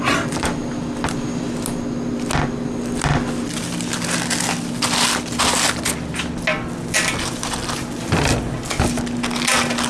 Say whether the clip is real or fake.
real